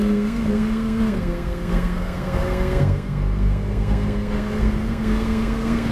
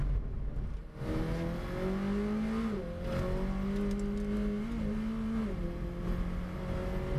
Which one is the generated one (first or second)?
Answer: first